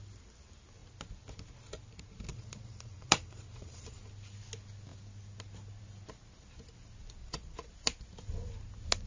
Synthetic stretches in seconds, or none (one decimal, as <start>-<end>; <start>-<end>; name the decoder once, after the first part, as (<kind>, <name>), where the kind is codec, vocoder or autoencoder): 2.3-4.0 (vocoder, Vocos); 7.2-7.7